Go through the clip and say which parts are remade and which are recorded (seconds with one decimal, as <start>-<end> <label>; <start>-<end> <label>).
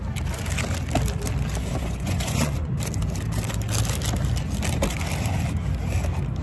0.0-1.8 recorded; 1.8-2.8 remade; 2.8-6.4 recorded